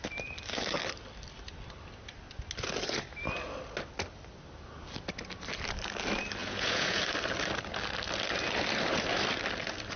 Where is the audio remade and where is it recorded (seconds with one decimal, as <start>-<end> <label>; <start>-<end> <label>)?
0.0-6.4 recorded; 6.4-7.0 remade; 7.0-10.0 recorded